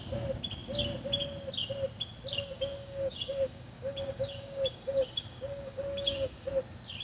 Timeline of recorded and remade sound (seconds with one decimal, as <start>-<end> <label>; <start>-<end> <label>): 0.0-2.3 recorded; 2.3-6.5 remade; 6.5-7.0 recorded